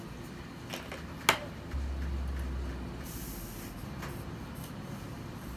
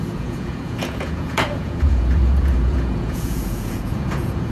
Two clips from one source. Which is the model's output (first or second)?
second